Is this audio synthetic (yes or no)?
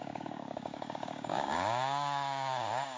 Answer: yes